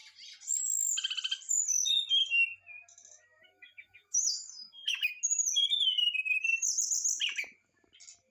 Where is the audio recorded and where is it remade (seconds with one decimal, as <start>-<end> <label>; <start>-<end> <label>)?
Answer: 0.0-3.4 recorded; 3.4-5.2 remade; 5.2-8.3 recorded